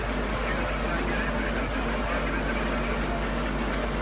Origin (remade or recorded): recorded